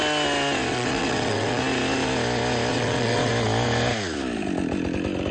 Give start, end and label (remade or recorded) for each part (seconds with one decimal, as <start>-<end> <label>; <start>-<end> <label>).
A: 0.0-0.7 recorded; 0.7-1.6 remade; 1.6-2.7 recorded; 2.7-3.3 remade; 3.3-5.3 recorded